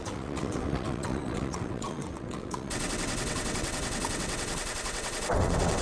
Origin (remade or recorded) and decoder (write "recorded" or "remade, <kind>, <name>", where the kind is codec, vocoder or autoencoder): remade, vocoder, WaveNeXt